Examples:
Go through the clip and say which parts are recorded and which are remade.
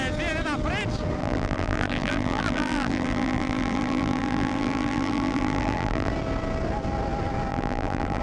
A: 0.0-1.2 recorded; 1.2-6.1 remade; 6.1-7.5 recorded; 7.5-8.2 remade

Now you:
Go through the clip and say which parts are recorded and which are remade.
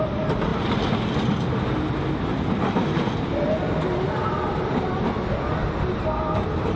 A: 0.0-6.8 recorded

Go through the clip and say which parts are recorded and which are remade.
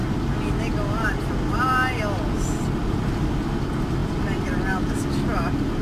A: 0.0-5.8 recorded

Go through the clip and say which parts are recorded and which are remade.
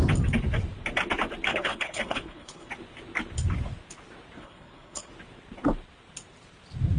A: 0.0-1.5 recorded; 1.5-2.7 remade; 2.7-4.4 recorded; 4.4-5.1 remade; 5.1-7.0 recorded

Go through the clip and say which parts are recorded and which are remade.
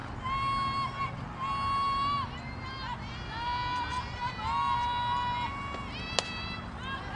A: 0.0-7.2 recorded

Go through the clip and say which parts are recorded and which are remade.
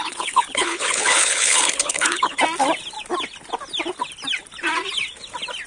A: 0.0-2.4 remade; 2.4-5.7 recorded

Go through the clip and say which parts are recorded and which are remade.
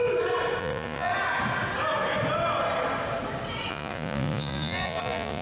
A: 0.0-0.6 recorded; 0.6-1.1 remade; 1.1-3.7 recorded; 3.7-5.4 remade